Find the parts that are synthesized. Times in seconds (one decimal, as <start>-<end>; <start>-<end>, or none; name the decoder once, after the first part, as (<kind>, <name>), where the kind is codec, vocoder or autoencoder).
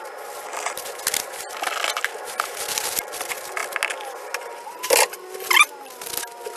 none